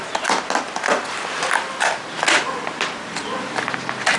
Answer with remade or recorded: recorded